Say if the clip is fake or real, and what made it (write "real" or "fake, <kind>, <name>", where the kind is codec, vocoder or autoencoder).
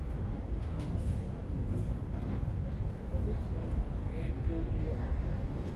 fake, codec, DAC